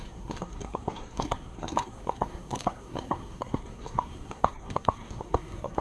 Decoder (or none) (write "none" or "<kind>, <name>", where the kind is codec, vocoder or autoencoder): codec, SNAC